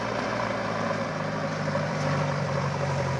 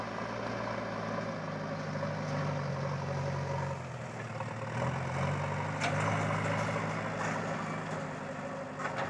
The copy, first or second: first